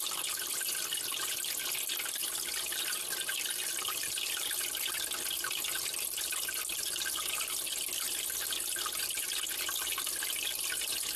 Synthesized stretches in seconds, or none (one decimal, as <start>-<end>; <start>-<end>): 2.2-3.0